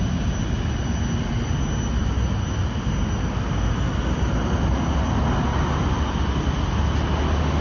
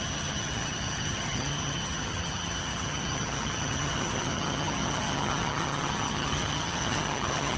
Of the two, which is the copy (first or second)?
second